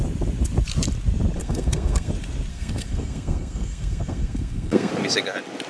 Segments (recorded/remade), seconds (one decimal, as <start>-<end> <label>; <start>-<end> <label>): 0.0-1.4 recorded; 1.4-2.1 remade; 2.1-2.5 recorded; 2.5-4.9 remade; 4.9-5.7 recorded